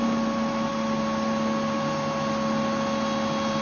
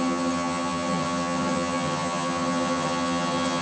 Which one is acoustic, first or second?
first